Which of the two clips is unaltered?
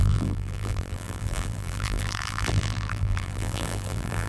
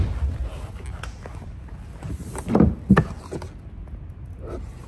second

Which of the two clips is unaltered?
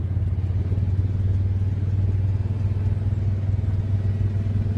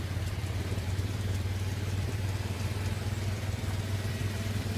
first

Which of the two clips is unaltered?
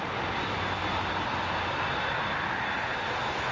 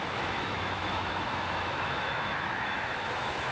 first